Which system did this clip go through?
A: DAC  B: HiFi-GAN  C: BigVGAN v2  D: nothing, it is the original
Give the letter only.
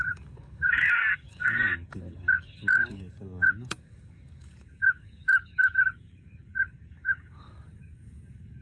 A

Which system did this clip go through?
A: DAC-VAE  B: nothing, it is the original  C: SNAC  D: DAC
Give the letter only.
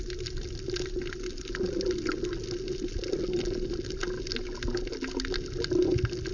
B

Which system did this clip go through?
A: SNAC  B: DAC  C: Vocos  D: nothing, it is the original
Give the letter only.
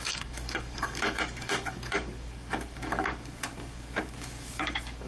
B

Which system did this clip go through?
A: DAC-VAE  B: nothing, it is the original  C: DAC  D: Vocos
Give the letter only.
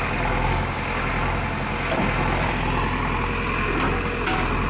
B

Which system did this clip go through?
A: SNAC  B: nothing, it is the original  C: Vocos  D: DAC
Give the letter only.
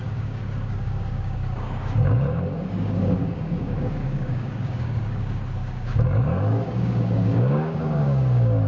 D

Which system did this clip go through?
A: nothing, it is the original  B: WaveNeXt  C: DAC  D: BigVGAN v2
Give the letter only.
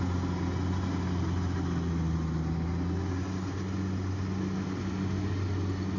A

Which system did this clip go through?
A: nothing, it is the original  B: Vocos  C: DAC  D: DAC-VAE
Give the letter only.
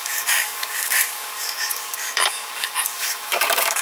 C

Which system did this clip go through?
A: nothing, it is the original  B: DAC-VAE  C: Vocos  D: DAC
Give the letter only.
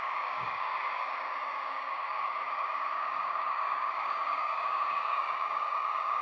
D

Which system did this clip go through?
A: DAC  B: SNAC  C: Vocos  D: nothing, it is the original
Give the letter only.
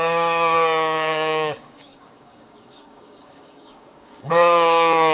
A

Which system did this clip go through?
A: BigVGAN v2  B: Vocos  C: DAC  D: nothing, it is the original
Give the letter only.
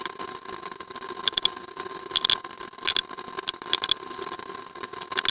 D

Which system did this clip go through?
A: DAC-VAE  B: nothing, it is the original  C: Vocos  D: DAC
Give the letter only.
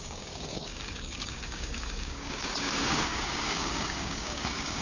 D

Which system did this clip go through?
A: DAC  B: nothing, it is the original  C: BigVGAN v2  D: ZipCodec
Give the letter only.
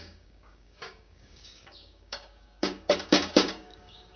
A